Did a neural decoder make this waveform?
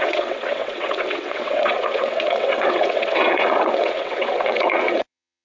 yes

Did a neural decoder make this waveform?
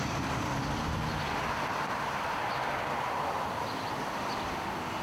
no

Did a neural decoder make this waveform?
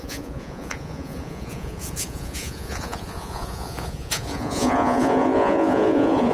yes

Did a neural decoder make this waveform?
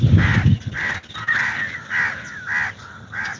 no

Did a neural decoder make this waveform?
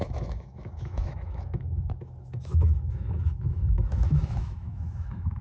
yes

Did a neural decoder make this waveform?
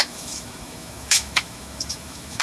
yes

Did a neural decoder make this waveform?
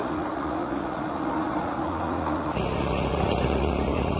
yes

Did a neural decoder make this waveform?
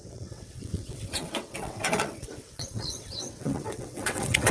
yes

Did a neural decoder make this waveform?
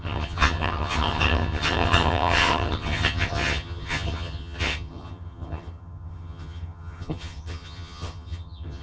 yes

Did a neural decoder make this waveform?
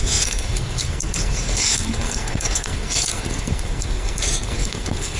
yes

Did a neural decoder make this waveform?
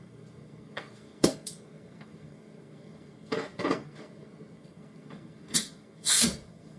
yes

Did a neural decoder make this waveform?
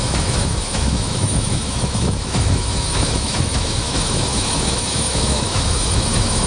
yes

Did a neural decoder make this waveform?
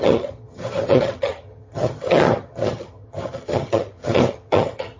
yes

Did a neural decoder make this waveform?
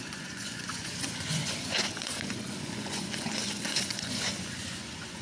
yes